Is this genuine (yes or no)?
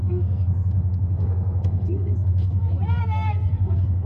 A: no